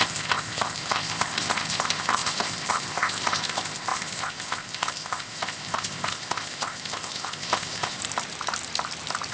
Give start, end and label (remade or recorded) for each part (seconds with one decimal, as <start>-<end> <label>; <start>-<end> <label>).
0.0-8.0 remade; 8.0-9.3 recorded